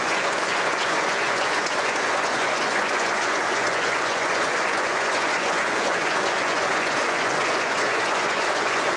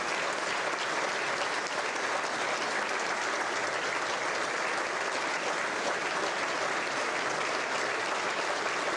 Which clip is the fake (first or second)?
first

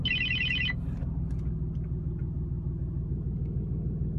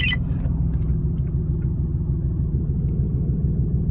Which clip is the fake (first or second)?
second